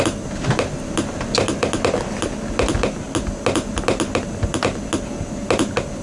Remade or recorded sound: recorded